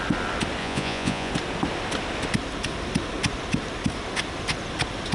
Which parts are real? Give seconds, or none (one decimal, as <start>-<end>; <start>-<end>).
0.0-0.6; 1.3-5.1

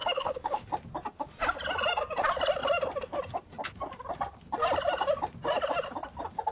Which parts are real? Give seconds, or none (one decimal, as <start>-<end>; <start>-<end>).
0.7-6.5